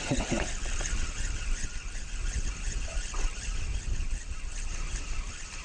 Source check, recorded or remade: recorded